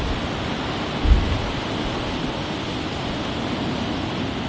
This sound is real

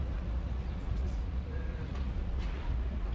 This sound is fake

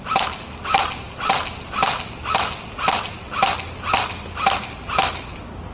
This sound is real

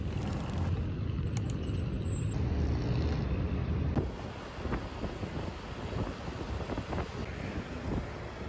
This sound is real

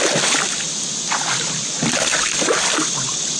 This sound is real